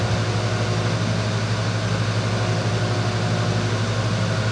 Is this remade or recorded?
recorded